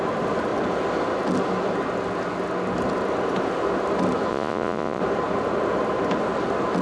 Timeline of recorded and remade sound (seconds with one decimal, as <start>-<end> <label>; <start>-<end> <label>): 0.0-4.3 recorded; 4.3-5.0 remade; 5.0-6.8 recorded